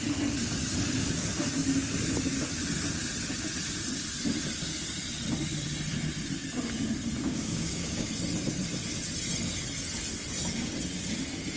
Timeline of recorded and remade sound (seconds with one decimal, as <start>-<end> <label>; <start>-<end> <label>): 0.0-7.2 recorded; 7.2-8.1 remade; 8.1-11.6 recorded